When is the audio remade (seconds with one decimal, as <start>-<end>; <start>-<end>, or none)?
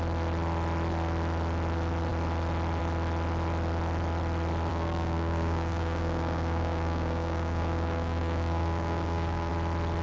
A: 4.7-9.5